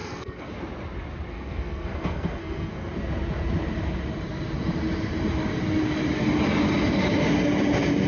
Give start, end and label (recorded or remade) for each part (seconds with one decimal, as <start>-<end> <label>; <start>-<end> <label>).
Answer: 0.0-0.5 remade; 0.5-1.3 recorded; 1.3-2.9 remade; 2.9-8.1 recorded